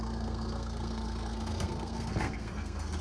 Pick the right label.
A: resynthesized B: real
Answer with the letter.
A